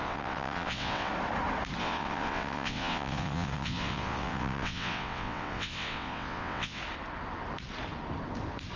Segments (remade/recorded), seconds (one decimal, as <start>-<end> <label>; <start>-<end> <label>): 0.0-1.1 remade; 1.1-1.8 recorded; 1.8-6.8 remade; 6.8-8.8 recorded